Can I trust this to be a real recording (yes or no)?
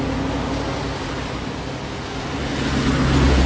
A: yes